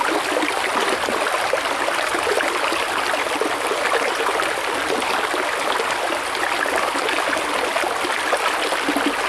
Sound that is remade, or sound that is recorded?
recorded